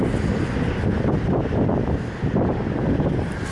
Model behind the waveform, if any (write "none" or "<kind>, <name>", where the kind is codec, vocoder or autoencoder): none